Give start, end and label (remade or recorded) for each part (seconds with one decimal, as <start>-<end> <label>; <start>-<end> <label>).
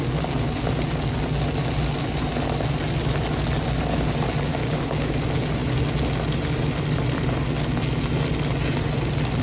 0.0-4.5 recorded; 4.5-5.1 remade; 5.1-9.4 recorded